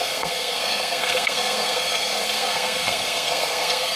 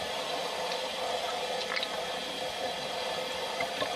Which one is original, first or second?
second